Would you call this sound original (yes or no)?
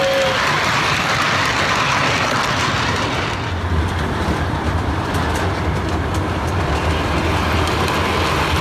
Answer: yes